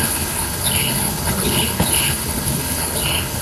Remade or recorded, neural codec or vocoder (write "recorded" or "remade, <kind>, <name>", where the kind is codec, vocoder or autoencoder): remade, codec, HILCodec